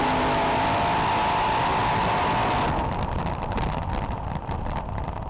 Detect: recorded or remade recorded